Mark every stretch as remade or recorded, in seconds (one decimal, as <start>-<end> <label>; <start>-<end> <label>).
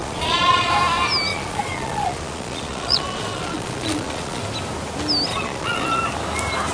0.0-0.7 remade; 0.7-1.3 recorded; 1.3-4.4 remade; 4.4-5.3 recorded; 5.3-6.0 remade; 6.0-6.7 recorded